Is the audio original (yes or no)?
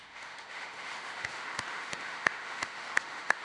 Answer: no